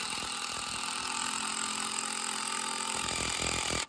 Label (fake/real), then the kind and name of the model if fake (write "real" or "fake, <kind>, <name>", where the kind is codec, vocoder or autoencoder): real